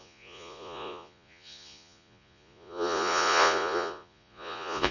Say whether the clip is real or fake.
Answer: fake